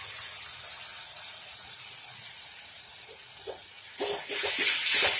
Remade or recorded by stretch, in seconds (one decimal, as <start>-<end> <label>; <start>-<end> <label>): 0.0-0.9 recorded; 0.9-4.0 remade; 4.0-5.2 recorded